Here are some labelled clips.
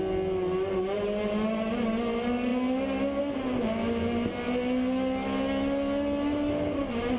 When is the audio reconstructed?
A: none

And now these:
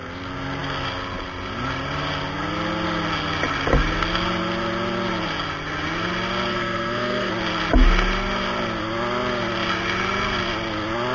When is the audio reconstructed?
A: 6.5-7.3 (codec, SNAC)

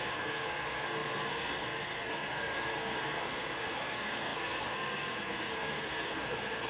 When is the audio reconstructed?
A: 0.0-6.7 (codec, SNAC)